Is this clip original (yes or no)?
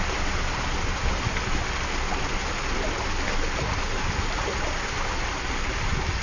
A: yes